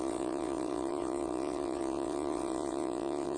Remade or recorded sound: remade